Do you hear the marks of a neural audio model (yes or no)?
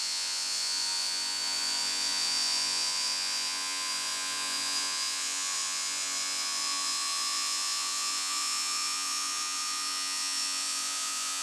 yes